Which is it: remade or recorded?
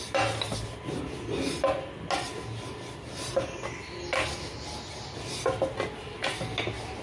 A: recorded